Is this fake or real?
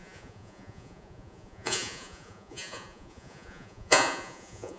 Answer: fake